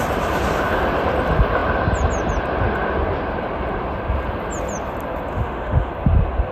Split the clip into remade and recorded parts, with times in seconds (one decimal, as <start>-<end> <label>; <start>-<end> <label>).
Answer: 0.0-5.3 recorded; 5.3-5.9 remade; 5.9-6.5 recorded